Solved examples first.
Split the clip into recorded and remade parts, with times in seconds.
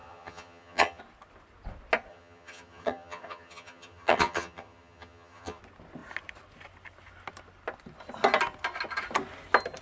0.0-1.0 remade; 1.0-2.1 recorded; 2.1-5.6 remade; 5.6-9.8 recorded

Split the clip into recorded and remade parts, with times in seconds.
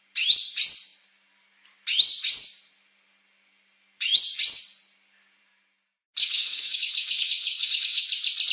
0.0-6.2 recorded; 6.2-8.0 remade; 8.0-8.5 recorded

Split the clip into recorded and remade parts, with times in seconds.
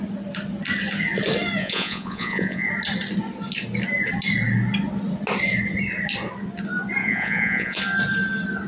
0.0-1.6 recorded; 1.6-2.7 remade; 2.7-7.0 recorded; 7.0-7.8 remade; 7.8-8.7 recorded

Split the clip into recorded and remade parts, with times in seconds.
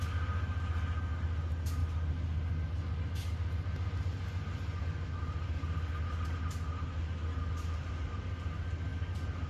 0.0-8.9 recorded; 8.9-9.5 remade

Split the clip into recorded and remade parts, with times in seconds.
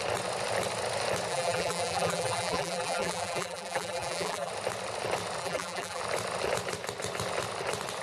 0.0-1.3 recorded; 1.3-4.5 remade; 4.5-5.4 recorded; 5.4-6.0 remade; 6.0-8.0 recorded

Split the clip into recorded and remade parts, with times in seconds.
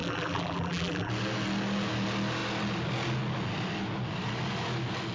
0.0-1.1 remade; 1.1-5.1 recorded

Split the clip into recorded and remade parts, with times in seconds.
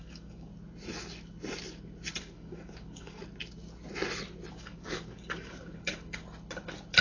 0.0-0.5 remade; 0.5-2.2 recorded; 2.2-3.2 remade; 3.2-4.5 recorded; 4.5-6.2 remade; 6.2-7.0 recorded